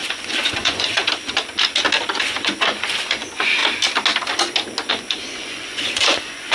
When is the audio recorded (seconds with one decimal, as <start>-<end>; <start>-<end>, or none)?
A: 1.0-2.2; 3.6-4.9